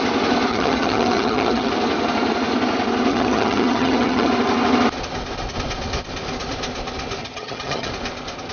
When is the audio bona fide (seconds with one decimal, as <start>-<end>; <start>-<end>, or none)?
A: 0.0-0.5; 1.7-3.1; 4.3-7.2; 7.9-8.5